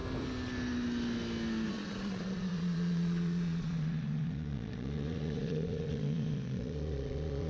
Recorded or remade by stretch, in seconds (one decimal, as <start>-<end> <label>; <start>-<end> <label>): 0.0-1.7 recorded; 1.7-7.5 remade